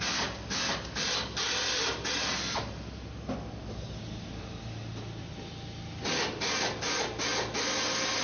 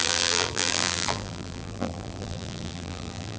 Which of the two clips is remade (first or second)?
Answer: second